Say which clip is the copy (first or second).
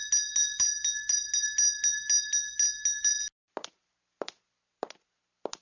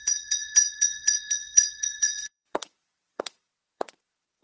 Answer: second